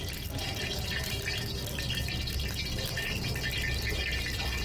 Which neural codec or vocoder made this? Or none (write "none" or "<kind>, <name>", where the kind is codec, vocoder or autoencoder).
none